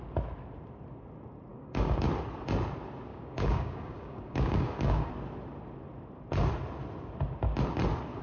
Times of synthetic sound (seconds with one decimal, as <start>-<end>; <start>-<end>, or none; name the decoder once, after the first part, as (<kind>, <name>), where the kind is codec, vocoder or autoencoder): 1.5-2.1 (codec, DAC); 3.1-5.1